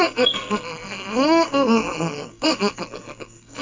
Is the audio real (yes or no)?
no